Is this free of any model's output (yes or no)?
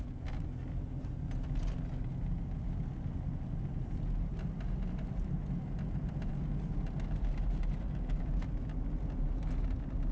yes